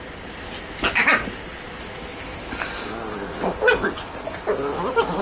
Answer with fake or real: real